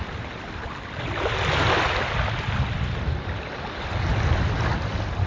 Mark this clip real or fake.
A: real